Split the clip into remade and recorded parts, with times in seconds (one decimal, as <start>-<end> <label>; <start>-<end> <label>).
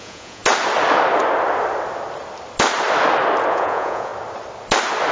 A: 0.0-0.4 remade; 0.4-3.5 recorded; 3.5-4.1 remade; 4.1-5.1 recorded